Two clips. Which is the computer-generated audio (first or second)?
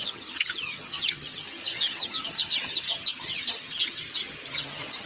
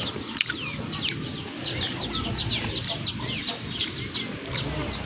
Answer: first